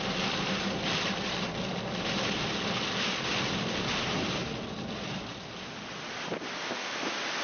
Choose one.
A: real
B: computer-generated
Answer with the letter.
A